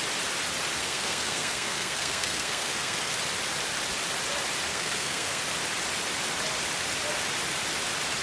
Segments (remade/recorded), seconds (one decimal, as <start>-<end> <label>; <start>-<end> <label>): 0.0-0.8 recorded; 0.8-3.1 remade; 3.1-4.7 recorded; 4.7-5.4 remade; 5.4-8.2 recorded